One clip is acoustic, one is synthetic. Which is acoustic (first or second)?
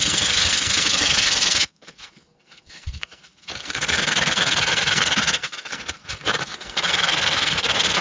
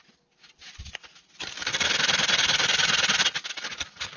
second